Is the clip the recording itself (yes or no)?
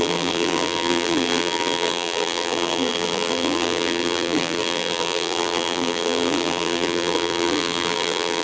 no